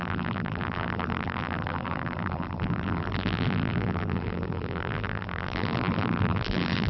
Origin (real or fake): fake